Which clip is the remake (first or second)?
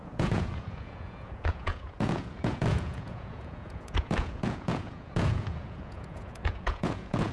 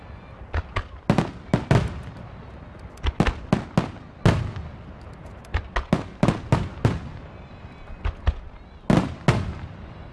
first